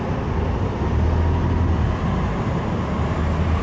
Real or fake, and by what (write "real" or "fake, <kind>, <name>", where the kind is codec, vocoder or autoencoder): real